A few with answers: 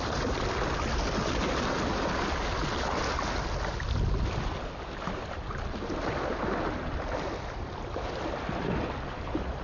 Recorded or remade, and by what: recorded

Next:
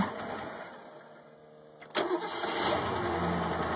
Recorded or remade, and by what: recorded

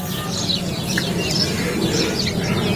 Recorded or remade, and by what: recorded